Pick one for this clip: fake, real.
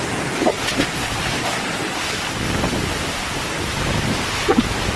fake